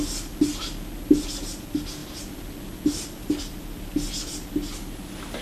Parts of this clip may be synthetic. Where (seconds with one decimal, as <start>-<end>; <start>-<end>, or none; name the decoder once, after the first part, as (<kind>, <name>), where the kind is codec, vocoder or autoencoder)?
none